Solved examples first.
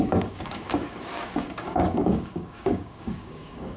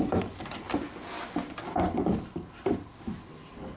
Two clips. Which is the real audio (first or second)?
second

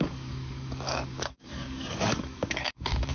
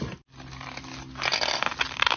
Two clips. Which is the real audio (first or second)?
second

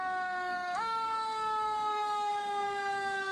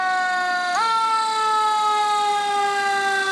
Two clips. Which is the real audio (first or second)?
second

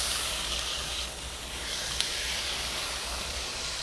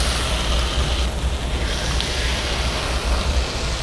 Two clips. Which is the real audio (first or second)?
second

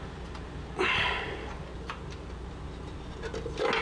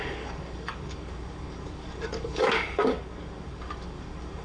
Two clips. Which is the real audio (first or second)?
first